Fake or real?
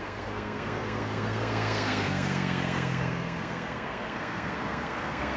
fake